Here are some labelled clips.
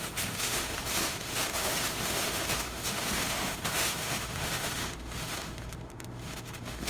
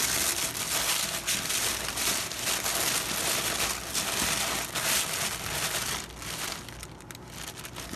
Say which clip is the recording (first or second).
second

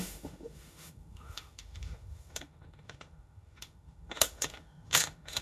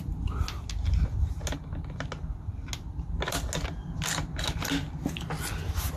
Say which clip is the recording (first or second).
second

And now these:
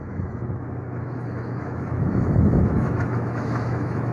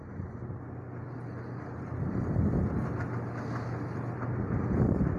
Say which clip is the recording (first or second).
second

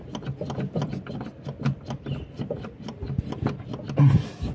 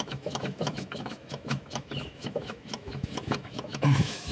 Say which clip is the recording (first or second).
first